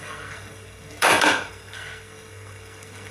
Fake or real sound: fake